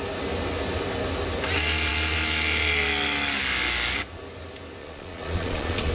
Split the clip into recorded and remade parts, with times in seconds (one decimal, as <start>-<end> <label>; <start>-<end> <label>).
0.0-4.8 recorded; 4.8-5.9 remade

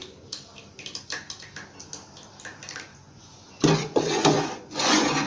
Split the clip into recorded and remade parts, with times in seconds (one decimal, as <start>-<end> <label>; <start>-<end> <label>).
0.0-2.9 recorded; 2.9-5.3 remade

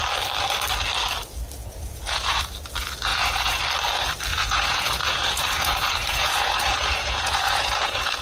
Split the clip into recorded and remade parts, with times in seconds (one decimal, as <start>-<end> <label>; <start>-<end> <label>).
0.0-1.6 recorded; 1.6-2.4 remade; 2.4-3.1 recorded; 3.1-3.6 remade; 3.6-4.3 recorded; 4.3-8.2 remade

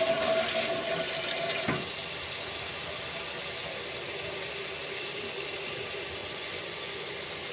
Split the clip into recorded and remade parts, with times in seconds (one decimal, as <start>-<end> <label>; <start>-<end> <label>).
0.0-6.2 recorded; 6.2-7.1 remade; 7.1-7.5 recorded